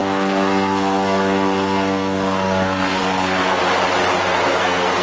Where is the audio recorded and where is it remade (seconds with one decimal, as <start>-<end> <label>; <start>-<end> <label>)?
0.0-3.6 remade; 3.6-4.2 recorded; 4.2-5.0 remade